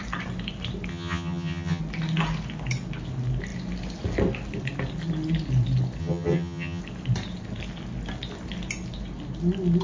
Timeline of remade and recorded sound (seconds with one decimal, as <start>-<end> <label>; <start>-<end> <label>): 0.0-0.9 recorded; 0.9-1.8 remade; 1.8-6.0 recorded; 6.0-6.8 remade; 6.8-9.8 recorded